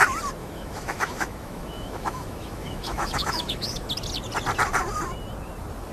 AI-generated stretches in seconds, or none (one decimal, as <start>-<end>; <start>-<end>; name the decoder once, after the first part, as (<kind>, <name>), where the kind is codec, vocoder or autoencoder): 0.4-3.9 (autoencoder, DAC-VAE)